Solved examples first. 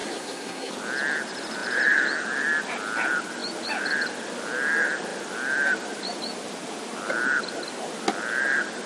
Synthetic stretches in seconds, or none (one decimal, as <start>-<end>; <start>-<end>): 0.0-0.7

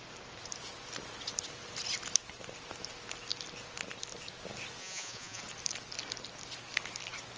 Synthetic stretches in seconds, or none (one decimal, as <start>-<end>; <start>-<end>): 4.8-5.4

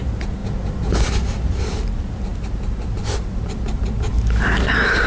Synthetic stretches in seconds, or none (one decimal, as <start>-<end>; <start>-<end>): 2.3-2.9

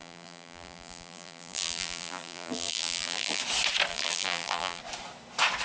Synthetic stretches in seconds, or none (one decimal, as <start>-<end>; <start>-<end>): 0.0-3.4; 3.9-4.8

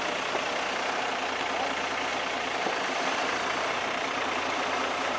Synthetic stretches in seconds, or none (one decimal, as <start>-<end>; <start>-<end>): 2.1-5.2

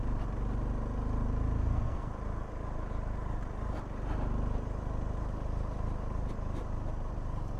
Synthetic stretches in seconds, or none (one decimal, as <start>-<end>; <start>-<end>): 1.6-2.1

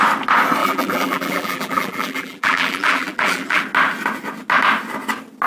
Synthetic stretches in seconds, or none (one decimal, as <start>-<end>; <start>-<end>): 0.6-3.6

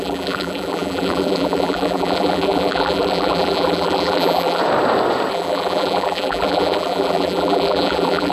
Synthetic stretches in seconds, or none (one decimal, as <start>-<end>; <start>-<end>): 0.0-4.6; 5.3-8.3